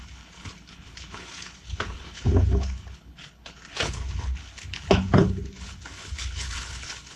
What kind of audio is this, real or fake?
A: fake